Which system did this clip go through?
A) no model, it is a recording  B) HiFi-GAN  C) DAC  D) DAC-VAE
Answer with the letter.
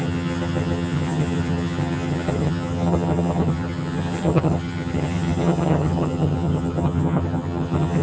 B